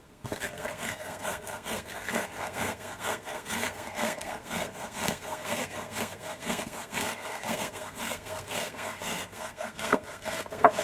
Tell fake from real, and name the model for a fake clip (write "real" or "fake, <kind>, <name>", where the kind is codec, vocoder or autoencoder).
fake, codec, SNAC